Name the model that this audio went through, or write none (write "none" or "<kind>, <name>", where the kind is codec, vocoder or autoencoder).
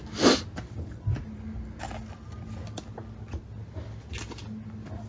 none